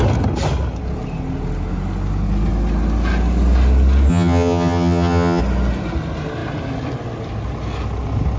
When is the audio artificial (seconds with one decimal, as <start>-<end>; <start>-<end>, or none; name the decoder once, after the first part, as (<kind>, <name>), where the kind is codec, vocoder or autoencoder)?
4.1-5.4 (vocoder, HiFi-GAN)